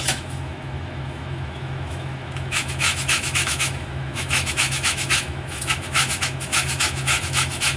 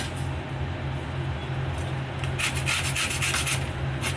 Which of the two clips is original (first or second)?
second